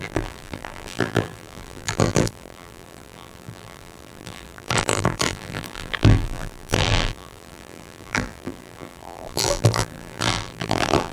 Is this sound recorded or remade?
remade